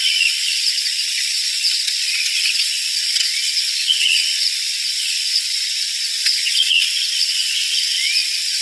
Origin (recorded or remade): remade